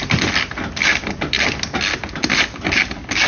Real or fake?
real